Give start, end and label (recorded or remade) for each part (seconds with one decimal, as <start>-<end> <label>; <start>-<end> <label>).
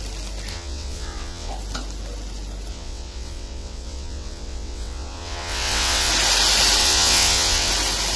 0.0-0.5 recorded; 0.5-1.5 remade; 1.5-2.7 recorded; 2.7-6.1 remade; 6.1-6.8 recorded; 6.8-7.7 remade; 7.7-8.2 recorded